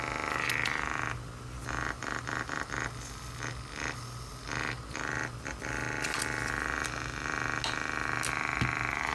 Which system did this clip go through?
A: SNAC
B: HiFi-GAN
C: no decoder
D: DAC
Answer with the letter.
C